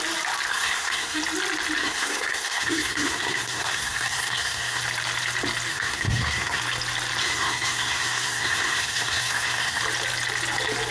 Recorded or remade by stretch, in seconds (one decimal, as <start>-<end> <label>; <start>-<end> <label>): 0.0-0.5 recorded; 0.5-1.2 remade; 1.2-1.8 recorded; 1.8-4.8 remade; 4.8-5.7 recorded; 5.7-6.6 remade; 6.6-7.2 recorded; 7.2-9.8 remade; 9.8-10.9 recorded